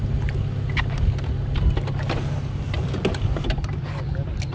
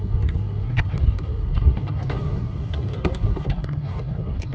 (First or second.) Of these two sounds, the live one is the first